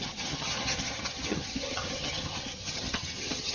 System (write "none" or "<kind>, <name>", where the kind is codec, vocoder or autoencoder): vocoder, HiFi-GAN